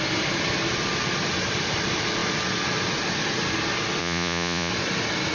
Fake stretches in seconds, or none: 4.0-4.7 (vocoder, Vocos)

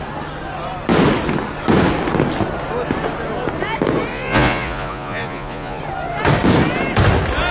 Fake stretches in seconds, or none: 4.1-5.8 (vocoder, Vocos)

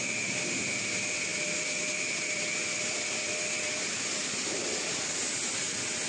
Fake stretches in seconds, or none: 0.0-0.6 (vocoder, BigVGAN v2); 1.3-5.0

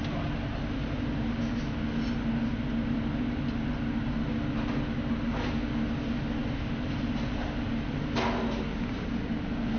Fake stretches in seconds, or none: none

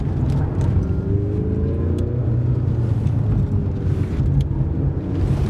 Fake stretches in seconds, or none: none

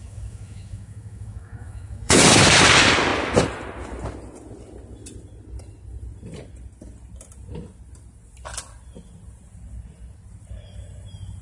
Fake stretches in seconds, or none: 0.0-2.2 (autoencoder, DAC-VAE)

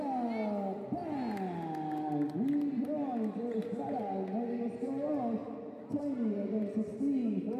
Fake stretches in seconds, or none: 5.4-6.0 (vocoder, BigVGAN v2)